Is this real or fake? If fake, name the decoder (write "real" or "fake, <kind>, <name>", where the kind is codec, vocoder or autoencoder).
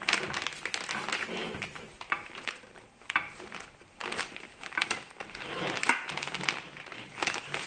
real